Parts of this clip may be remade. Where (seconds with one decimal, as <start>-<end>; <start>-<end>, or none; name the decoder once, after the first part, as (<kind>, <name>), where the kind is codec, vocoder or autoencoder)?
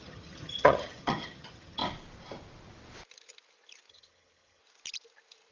0.0-1.8 (vocoder, HiFi-GAN); 3.9-4.6